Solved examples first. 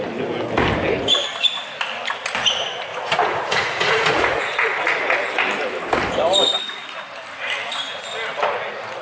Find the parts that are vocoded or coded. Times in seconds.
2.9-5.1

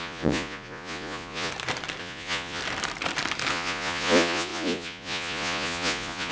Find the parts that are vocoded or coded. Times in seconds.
0.0-1.5; 2.0-2.6; 3.5-6.3

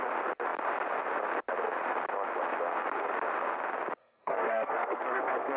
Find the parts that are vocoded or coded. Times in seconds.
4.0-5.6

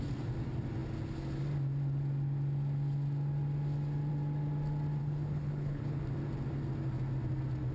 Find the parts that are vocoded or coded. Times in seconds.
5.0-6.0

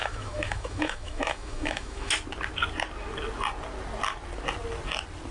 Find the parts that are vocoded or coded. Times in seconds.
0.0-2.1

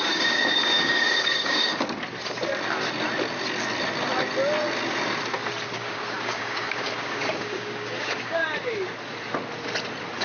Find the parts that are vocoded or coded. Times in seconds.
0.0-1.7; 5.7-8.4

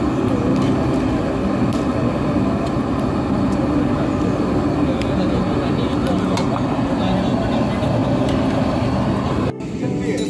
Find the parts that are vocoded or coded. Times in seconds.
none